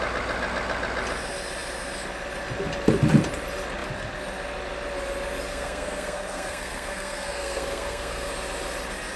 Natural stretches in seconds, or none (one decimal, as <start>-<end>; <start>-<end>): 0.0-5.5; 8.3-9.2